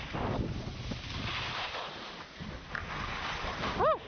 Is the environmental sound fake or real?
real